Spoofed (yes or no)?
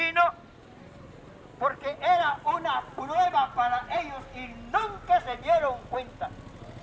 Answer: no